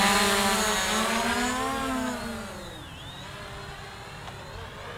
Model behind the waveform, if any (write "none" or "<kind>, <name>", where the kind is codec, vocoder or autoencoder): none